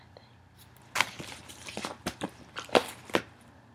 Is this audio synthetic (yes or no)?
yes